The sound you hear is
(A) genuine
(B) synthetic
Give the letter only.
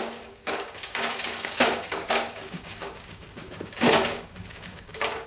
B